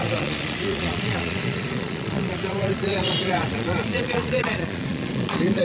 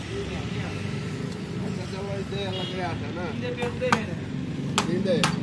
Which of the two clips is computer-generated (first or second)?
first